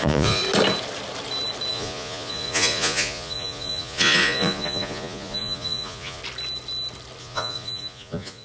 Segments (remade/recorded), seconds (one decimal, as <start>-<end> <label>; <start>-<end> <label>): 0.0-0.4 remade; 0.4-1.7 recorded; 1.7-6.2 remade; 6.2-7.2 recorded; 7.2-8.4 remade